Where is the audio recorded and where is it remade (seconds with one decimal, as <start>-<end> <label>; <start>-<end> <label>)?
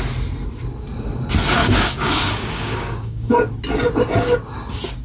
0.0-1.6 recorded; 1.6-3.3 remade; 3.3-5.0 recorded